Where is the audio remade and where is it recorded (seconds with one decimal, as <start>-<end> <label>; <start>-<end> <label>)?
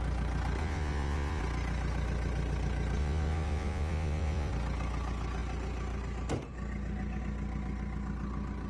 0.0-0.6 recorded; 0.6-1.4 remade; 1.4-3.0 recorded; 3.0-4.5 remade; 4.5-8.7 recorded